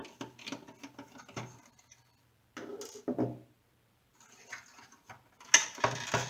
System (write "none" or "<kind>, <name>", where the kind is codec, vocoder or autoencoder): none